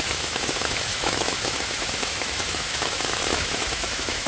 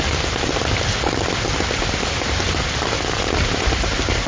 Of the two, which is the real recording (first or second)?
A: second